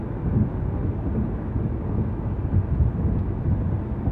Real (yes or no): yes